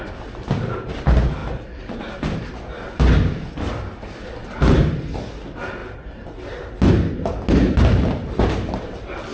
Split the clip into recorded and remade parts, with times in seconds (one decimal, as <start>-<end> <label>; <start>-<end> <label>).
0.0-9.3 recorded